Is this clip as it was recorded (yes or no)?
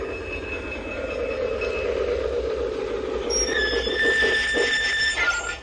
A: yes